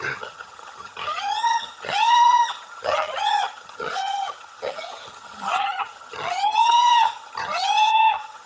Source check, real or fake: fake